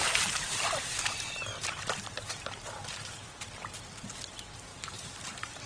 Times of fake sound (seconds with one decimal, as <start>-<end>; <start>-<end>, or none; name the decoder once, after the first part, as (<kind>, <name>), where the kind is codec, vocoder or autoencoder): 0.0-3.4 (vocoder, BigVGAN v2); 4.7-5.7